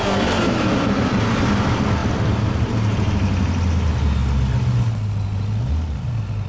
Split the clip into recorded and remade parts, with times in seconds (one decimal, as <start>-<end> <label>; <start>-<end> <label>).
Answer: 0.0-6.5 recorded